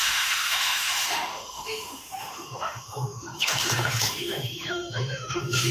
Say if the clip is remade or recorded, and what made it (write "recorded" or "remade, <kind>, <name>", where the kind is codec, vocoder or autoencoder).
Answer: remade, autoencoder, DAC-VAE